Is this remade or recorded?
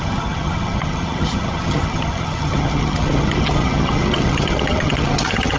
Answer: remade